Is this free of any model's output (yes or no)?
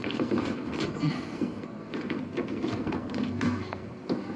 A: no